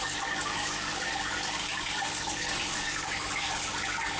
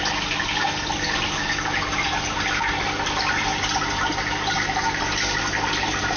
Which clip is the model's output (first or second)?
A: first